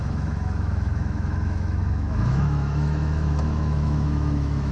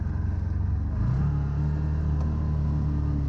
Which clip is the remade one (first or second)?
first